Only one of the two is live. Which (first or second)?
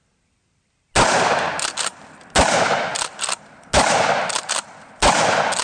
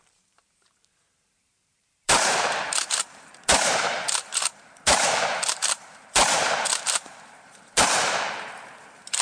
first